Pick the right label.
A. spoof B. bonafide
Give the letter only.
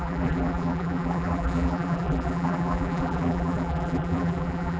A